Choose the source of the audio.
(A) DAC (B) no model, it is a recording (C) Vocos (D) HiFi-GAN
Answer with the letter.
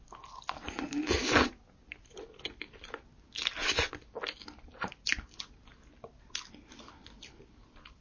B